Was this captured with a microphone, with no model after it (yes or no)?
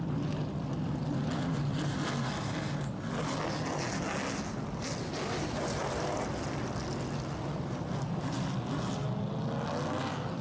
yes